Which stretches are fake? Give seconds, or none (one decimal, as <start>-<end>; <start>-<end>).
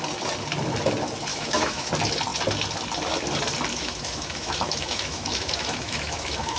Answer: 1.3-1.9; 3.7-6.6